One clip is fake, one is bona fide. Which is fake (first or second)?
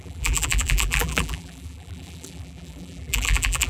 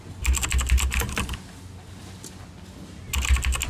first